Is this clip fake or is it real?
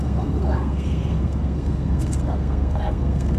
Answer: fake